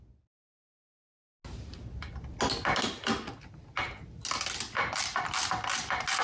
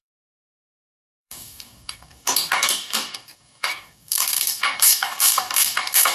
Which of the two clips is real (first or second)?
first